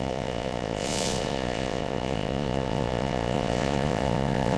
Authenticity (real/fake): fake